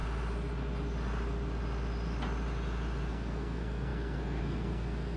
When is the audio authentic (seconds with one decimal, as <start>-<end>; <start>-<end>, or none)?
0.0-3.1